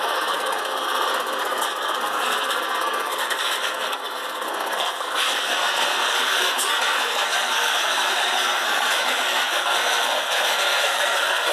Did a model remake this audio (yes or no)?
yes